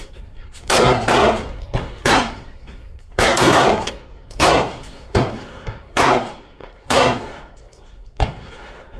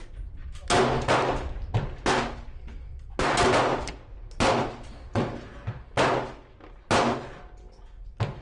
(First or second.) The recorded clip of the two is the second